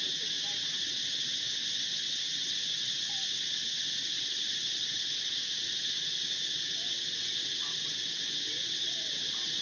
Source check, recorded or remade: remade